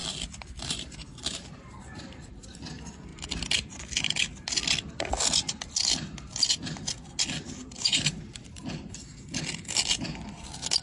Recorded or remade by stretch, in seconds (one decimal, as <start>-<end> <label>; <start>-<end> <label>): 0.0-1.1 recorded; 1.1-1.8 remade; 1.8-7.6 recorded; 7.6-8.6 remade; 8.6-10.8 recorded